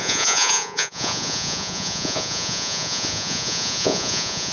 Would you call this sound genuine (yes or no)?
no